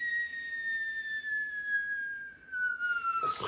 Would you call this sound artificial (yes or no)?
no